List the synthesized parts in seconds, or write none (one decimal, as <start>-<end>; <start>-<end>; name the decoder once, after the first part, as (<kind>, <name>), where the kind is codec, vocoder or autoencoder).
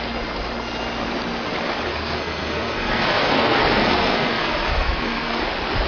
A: 1.9-5.4 (codec, SNAC)